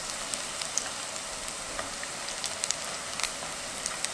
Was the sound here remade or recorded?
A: recorded